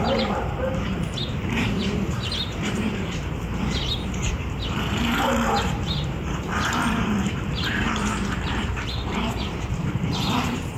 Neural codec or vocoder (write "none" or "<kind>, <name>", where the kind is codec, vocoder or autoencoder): vocoder, BigVGAN v2